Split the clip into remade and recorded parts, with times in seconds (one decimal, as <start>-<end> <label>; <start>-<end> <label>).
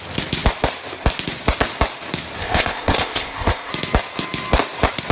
0.0-2.4 recorded; 2.4-3.7 remade; 3.7-5.1 recorded